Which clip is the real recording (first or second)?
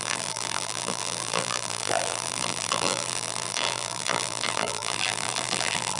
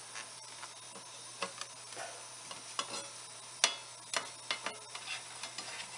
second